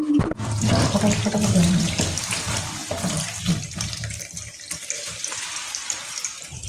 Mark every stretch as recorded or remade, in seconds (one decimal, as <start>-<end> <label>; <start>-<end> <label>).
0.0-6.7 recorded